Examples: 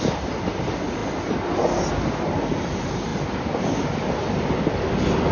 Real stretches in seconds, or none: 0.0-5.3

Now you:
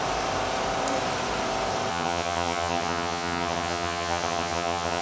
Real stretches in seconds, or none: 0.0-1.9